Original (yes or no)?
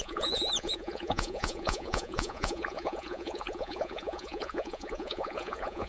no